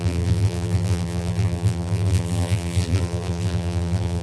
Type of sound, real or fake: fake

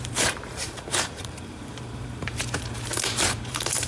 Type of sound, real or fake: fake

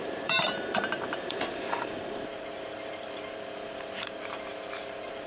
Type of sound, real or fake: fake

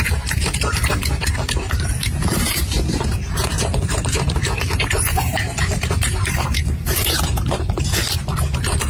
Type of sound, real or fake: fake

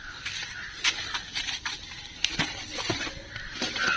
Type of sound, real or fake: fake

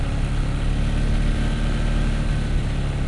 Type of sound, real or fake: real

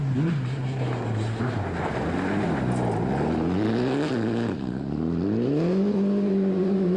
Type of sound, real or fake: real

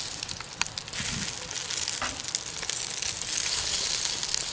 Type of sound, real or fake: real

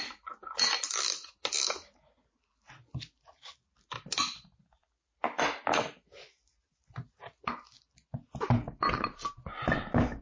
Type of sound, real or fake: real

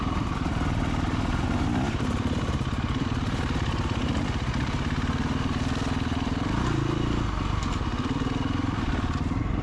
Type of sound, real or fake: fake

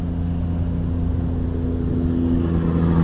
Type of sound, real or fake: real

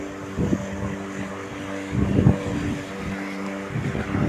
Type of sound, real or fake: real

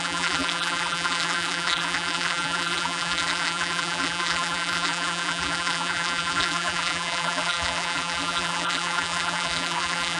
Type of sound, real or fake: fake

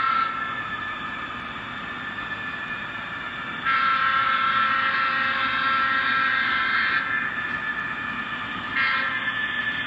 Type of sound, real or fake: real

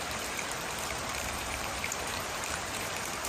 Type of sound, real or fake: fake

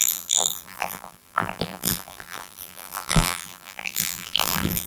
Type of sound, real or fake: fake